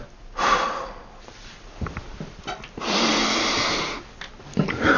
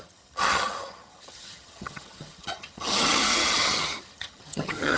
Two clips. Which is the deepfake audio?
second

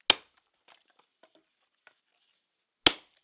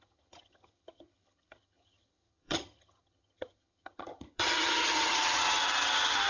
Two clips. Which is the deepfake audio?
second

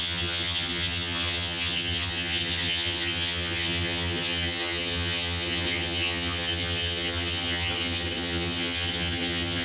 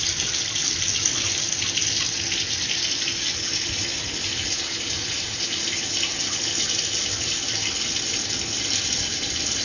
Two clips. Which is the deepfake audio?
first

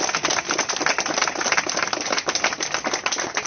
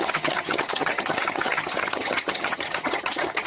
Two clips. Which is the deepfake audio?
second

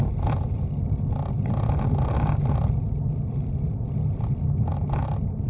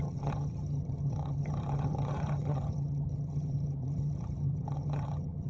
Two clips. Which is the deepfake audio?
second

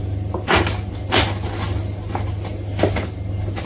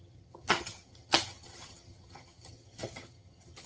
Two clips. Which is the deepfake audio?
second